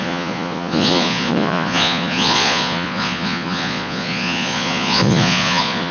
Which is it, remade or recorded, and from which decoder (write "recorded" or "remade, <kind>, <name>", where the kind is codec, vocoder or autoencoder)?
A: remade, vocoder, Vocos